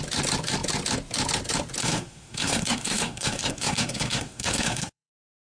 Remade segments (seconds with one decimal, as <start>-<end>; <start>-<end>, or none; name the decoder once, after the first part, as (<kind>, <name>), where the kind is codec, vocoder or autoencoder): 1.8-5.1 (codec, SNAC)